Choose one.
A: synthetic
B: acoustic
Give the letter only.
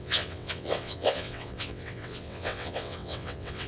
A